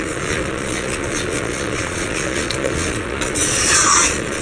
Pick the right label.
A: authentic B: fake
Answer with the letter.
B